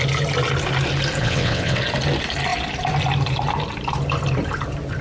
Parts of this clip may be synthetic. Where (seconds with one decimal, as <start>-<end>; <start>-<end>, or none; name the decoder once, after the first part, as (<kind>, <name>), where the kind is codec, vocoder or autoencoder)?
1.2-1.8 (vocoder, WaveNeXt)